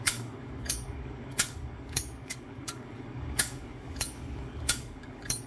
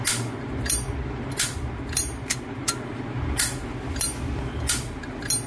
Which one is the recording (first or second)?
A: second